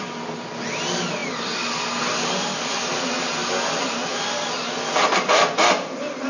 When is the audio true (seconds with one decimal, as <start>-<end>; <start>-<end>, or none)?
0.0-6.3